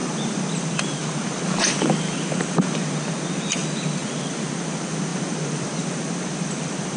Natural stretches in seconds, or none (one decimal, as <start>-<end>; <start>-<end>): 3.1-4.0; 4.5-5.1